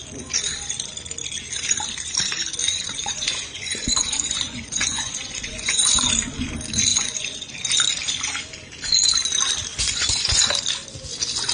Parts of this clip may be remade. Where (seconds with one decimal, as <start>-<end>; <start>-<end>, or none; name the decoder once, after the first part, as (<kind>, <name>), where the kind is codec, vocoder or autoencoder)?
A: 2.6-6.1 (vocoder, Vocos); 6.9-7.5; 9.7-10.5